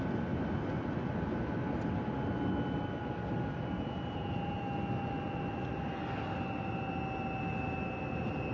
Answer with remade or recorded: recorded